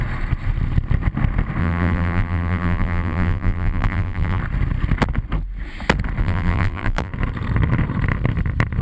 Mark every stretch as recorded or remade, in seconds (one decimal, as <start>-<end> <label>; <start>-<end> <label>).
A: 0.0-1.6 recorded; 1.6-4.4 remade; 4.4-6.2 recorded; 6.2-7.1 remade; 7.1-8.8 recorded